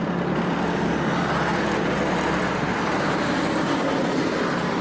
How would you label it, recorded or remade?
recorded